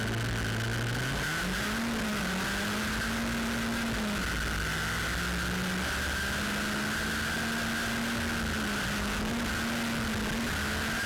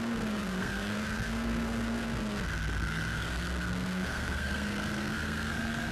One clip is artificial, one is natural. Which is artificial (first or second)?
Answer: second